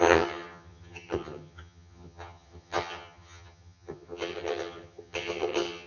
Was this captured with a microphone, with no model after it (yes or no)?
no